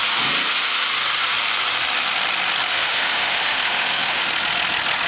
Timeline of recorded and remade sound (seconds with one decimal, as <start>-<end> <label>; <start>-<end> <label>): 0.0-2.7 recorded; 2.7-4.2 remade; 4.2-5.1 recorded